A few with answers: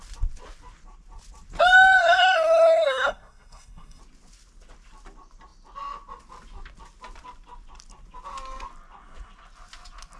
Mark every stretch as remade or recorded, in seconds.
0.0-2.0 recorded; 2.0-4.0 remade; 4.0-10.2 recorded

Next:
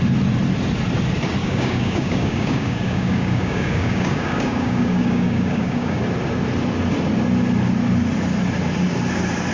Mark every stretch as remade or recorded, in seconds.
0.0-1.4 recorded; 1.4-6.0 remade; 6.0-9.5 recorded

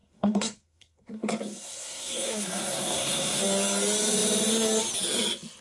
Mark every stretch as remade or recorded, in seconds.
0.0-3.4 remade; 3.4-5.6 recorded

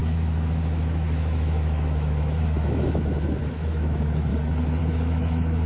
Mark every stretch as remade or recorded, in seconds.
0.0-4.3 remade; 4.3-4.8 recorded; 4.8-5.7 remade

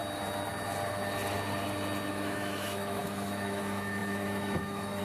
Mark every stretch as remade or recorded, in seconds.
0.0-2.1 recorded; 2.1-5.0 remade

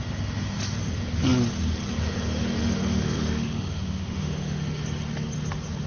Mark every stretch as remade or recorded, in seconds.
0.0-2.6 recorded; 2.6-4.8 remade; 4.8-5.9 recorded